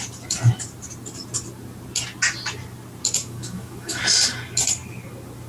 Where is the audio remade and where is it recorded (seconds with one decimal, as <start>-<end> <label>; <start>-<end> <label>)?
0.0-3.2 recorded; 3.2-4.0 remade; 4.0-5.5 recorded